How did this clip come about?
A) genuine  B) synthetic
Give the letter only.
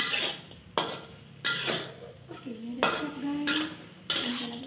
A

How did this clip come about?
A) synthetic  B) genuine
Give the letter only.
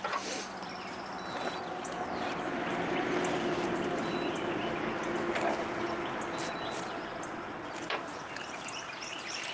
B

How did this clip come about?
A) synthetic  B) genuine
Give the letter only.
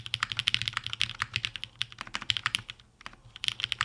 B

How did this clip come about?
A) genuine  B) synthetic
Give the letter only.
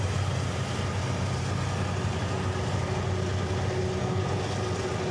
A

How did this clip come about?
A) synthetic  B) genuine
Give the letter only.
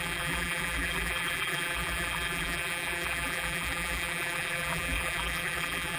A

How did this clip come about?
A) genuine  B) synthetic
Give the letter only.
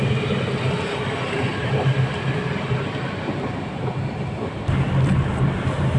A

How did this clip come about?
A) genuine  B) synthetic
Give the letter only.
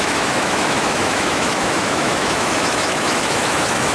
B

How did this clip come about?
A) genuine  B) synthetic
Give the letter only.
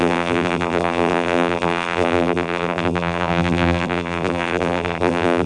B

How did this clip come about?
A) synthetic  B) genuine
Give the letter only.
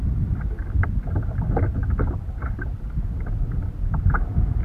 B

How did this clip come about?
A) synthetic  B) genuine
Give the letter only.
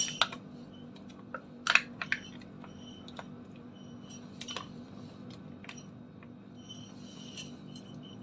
B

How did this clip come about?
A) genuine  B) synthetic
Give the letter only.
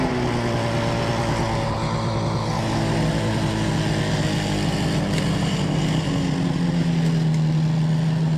A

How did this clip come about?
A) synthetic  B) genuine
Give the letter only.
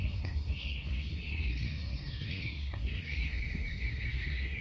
A